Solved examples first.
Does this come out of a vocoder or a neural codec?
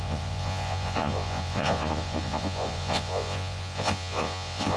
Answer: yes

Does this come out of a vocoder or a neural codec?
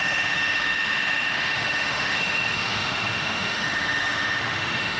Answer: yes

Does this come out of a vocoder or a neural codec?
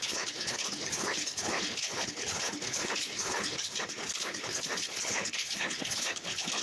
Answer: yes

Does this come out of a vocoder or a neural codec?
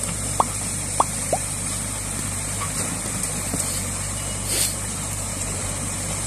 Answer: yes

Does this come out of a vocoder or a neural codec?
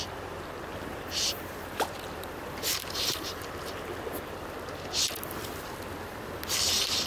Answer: yes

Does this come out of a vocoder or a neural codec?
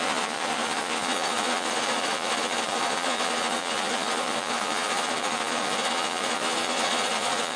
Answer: yes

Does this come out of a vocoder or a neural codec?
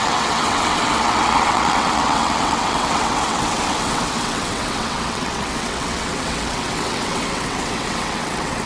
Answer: yes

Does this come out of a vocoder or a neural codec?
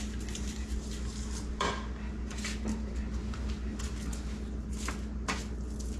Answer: no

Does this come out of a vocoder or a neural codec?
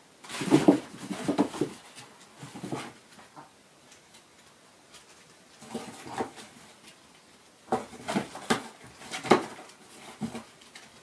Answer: no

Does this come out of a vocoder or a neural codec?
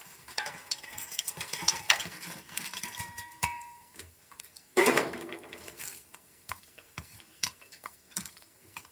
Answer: yes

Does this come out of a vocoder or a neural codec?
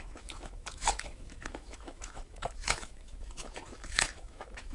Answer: yes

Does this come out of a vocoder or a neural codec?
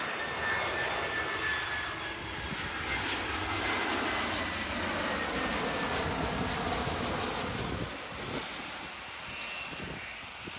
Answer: no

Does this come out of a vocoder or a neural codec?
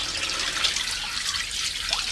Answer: no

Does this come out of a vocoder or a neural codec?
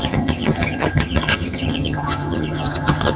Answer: yes